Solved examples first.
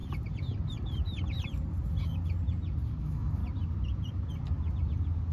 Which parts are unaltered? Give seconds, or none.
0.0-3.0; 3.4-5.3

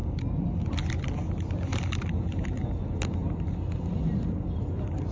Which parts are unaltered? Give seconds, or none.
0.0-5.1

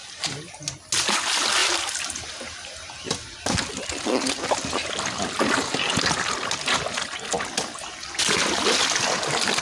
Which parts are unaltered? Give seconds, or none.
0.6-1.6; 3.1-9.6

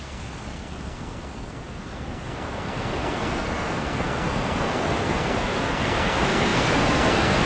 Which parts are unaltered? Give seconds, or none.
none

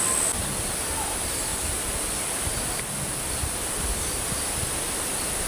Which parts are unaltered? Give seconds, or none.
0.0-1.5; 2.8-5.5

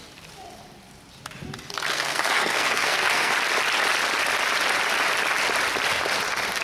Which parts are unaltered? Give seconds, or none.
0.0-1.9; 3.3-6.6